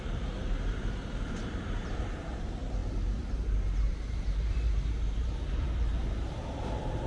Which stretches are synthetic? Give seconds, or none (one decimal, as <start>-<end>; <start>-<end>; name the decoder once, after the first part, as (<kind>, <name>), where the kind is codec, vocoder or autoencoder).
0.0-7.1 (vocoder, BigVGAN v2)